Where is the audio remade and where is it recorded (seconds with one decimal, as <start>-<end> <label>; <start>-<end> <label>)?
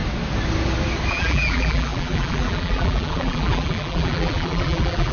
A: 0.0-1.1 recorded; 1.1-5.1 remade